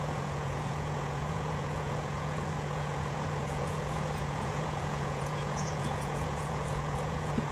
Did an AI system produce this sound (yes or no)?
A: yes